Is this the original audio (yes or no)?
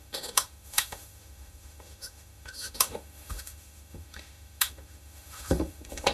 no